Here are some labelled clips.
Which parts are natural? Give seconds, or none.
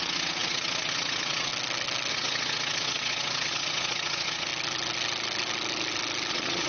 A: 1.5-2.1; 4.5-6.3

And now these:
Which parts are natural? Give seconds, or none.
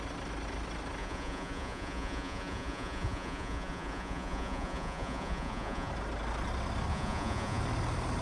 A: 0.0-1.0; 5.9-6.9; 7.6-8.2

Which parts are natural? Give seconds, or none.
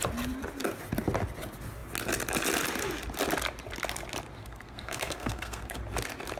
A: 0.0-4.4; 5.8-6.4